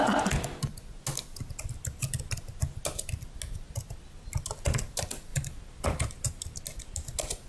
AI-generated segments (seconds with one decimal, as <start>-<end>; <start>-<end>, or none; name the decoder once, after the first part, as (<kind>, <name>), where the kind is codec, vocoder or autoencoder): 5.3-6.6 (vocoder, BigVGAN v2)